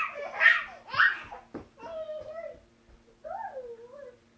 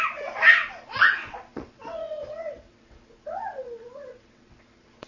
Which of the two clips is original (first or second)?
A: first